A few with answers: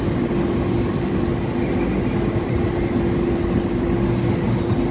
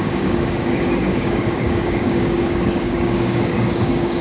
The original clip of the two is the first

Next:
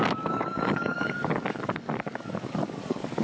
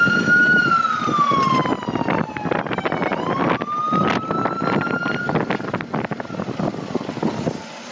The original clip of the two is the second